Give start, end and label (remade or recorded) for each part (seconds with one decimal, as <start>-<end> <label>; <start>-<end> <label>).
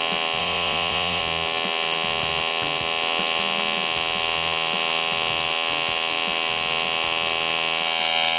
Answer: 0.0-0.4 recorded; 0.4-1.2 remade; 1.2-8.4 recorded